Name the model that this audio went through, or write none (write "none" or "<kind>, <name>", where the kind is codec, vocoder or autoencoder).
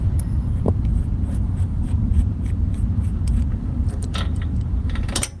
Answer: vocoder, BigVGAN v2